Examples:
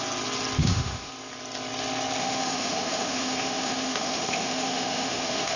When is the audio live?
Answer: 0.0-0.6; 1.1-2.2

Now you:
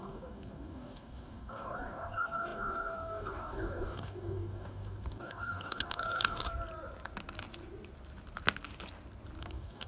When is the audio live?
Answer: 6.5-9.4

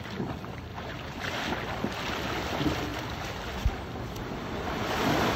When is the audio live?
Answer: 0.0-0.7; 1.4-5.4

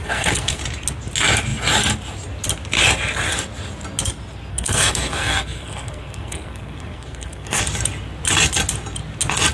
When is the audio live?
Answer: 0.6-4.5; 7.6-9.5

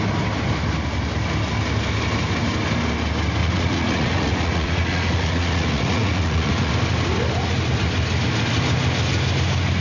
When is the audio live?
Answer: 0.0-3.4; 6.7-9.8